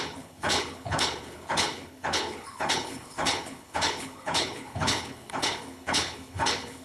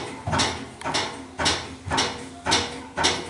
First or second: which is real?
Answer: second